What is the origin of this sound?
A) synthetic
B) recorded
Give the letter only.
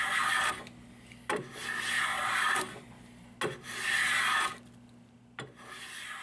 B